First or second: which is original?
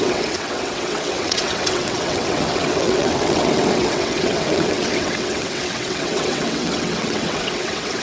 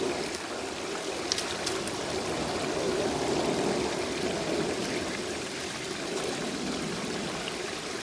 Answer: second